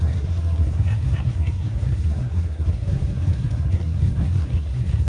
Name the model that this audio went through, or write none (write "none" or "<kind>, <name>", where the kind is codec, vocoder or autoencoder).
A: codec, SNAC